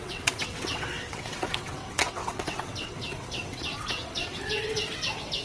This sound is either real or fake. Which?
fake